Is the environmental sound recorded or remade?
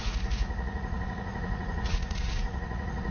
remade